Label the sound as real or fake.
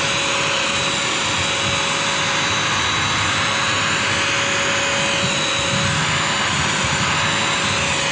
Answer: real